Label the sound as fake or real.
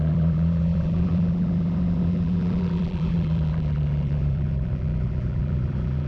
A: fake